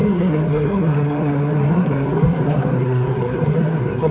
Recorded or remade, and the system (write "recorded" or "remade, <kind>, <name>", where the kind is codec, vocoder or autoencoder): remade, codec, SNAC